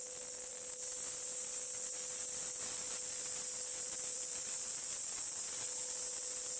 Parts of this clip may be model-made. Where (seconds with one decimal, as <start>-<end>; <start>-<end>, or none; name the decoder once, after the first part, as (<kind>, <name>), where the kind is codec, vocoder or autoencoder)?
3.7-5.4 (vocoder, BigVGAN v2)